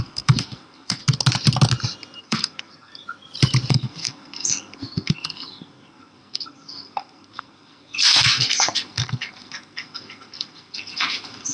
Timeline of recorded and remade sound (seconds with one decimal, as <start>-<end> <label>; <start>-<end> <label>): 0.0-1.0 remade; 1.0-2.2 recorded; 2.2-2.9 remade; 2.9-3.7 recorded; 3.7-11.5 remade